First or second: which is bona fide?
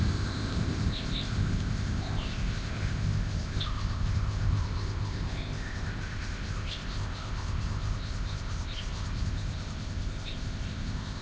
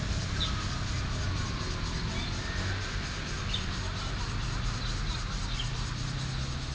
second